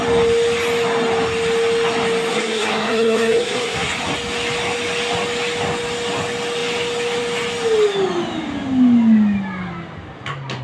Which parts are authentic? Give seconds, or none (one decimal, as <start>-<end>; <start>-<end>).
0.0-2.3; 3.9-10.6